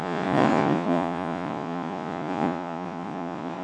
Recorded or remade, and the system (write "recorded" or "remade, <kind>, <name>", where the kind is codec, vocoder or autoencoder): remade, vocoder, Vocos